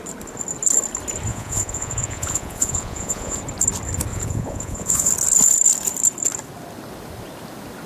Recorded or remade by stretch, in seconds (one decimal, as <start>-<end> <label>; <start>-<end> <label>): 0.0-1.3 recorded; 1.3-3.4 remade; 3.4-4.1 recorded; 4.1-5.1 remade; 5.1-7.9 recorded